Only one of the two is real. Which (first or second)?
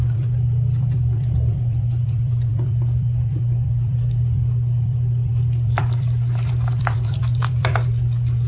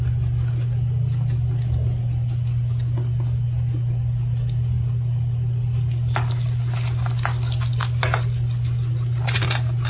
second